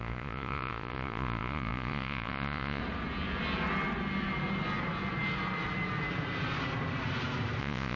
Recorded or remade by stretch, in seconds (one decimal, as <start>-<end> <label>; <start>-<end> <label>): 0.0-2.8 remade; 2.8-7.6 recorded; 7.6-8.0 remade